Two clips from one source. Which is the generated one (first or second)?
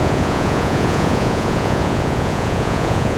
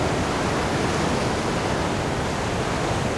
first